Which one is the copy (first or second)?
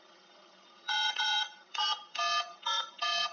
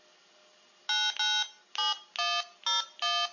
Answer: first